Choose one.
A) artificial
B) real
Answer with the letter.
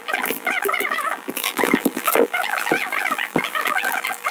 A